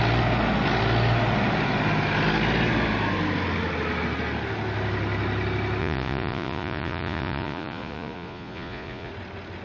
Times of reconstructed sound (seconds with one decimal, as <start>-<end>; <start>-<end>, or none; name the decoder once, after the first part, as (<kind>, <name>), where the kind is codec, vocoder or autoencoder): 5.8-9.1 (vocoder, Vocos)